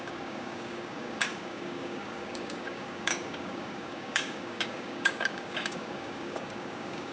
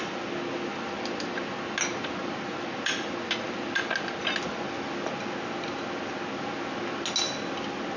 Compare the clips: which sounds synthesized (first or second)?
first